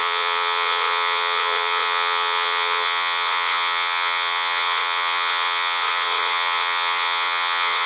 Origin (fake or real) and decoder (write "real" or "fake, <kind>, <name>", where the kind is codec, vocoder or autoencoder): fake, vocoder, WaveNeXt